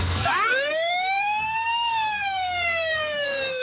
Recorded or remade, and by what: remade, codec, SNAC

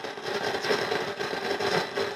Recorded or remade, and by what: recorded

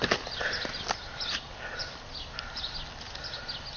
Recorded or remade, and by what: recorded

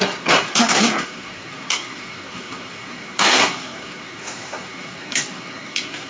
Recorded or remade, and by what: remade, codec, SNAC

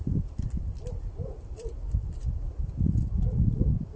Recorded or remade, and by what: recorded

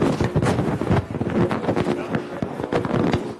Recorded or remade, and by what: recorded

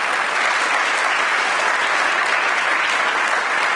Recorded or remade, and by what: recorded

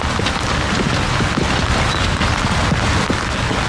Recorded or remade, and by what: recorded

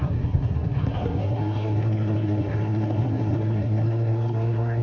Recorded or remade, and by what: remade, codec, SNAC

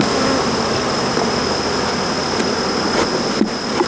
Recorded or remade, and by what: recorded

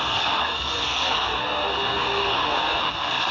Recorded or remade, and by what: remade, codec, SNAC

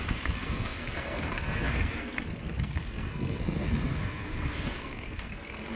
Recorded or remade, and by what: remade, codec, SNAC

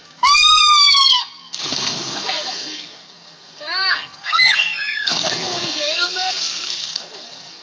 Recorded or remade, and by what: remade, codec, SNAC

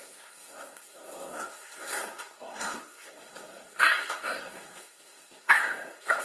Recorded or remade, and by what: remade, codec, SNAC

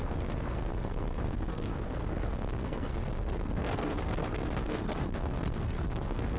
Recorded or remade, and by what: remade, codec, SNAC